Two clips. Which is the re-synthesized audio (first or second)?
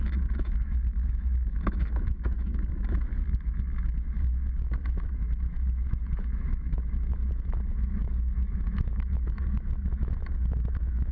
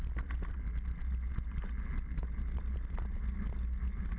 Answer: first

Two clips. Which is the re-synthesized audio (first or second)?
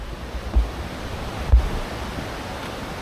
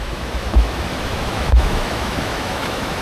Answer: second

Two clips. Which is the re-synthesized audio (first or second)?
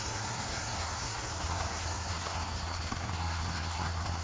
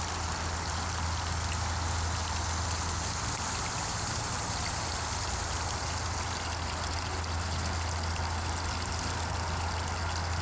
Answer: first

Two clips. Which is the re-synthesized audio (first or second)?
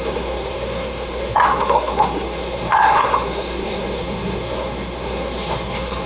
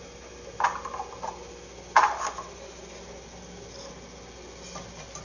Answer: first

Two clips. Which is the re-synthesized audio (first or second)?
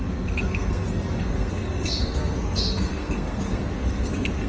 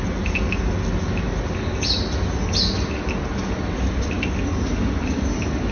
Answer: first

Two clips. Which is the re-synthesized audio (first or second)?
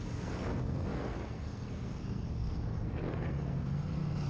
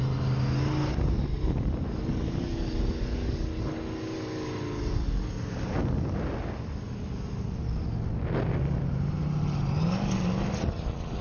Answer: first